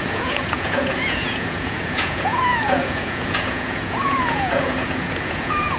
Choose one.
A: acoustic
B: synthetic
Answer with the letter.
B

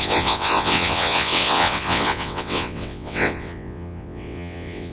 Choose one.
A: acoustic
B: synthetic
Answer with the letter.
B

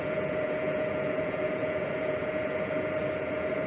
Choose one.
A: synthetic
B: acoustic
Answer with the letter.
A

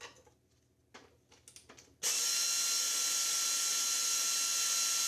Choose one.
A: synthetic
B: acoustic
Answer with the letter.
B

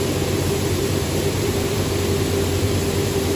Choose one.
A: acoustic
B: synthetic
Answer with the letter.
B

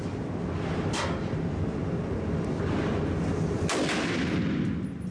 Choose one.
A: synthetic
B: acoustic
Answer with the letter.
B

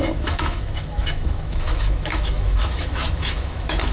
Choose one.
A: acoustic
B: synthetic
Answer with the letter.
B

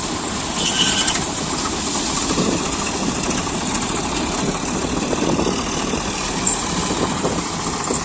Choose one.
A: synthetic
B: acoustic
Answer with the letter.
B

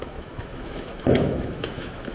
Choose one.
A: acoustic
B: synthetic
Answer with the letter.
B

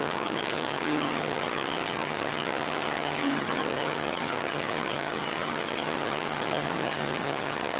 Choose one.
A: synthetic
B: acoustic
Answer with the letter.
A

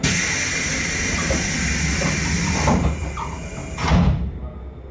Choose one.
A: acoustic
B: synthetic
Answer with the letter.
A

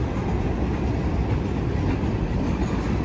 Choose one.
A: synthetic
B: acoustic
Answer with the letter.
B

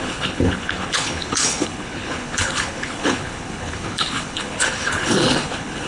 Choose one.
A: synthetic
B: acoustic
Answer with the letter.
A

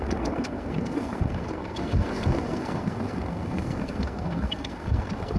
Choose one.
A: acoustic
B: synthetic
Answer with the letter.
B